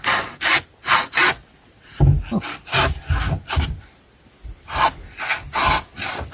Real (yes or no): yes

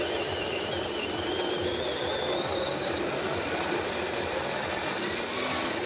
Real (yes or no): yes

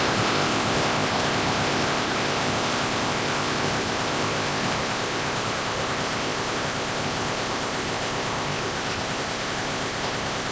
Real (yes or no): no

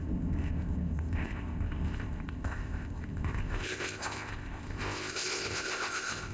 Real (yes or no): no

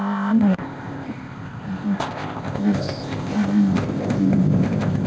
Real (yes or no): no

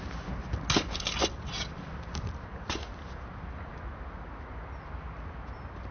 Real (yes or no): yes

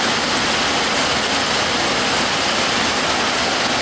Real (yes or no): yes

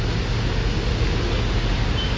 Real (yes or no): yes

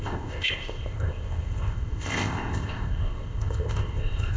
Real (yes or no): no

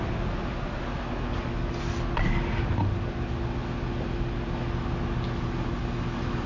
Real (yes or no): yes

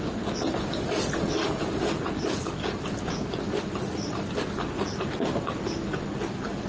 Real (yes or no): yes